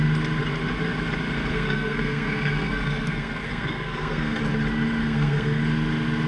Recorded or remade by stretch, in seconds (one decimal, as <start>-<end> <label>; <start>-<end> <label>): 0.0-1.5 recorded; 1.5-4.4 remade; 4.4-5.0 recorded; 5.0-5.6 remade; 5.6-6.3 recorded

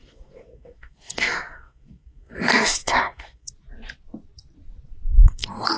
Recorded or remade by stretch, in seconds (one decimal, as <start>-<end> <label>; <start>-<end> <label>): 0.0-3.5 remade; 3.5-5.1 recorded; 5.1-5.8 remade

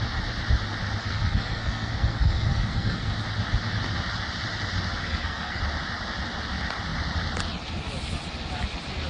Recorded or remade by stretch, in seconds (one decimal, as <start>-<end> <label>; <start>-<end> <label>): 0.0-1.0 recorded; 1.0-3.1 remade; 3.1-5.0 recorded; 5.0-5.6 remade; 5.6-9.1 recorded

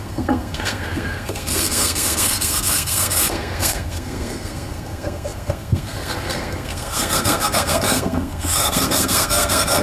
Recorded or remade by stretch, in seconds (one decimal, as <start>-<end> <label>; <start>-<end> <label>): 0.0-9.8 remade

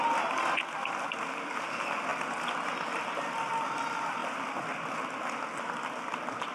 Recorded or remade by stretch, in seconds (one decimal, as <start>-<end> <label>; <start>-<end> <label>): 0.0-6.5 recorded

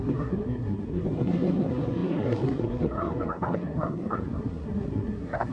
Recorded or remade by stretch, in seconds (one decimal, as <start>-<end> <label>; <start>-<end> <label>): 0.0-5.5 remade

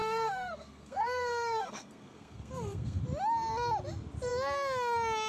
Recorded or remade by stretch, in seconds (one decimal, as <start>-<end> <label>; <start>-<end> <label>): 0.0-3.0 remade; 3.0-5.3 recorded